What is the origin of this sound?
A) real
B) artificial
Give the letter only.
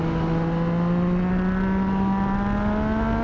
A